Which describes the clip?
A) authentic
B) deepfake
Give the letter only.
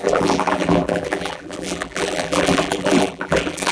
B